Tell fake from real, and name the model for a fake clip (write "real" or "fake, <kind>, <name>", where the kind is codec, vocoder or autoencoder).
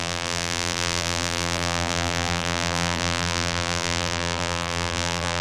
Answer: fake, vocoder, BigVGAN v2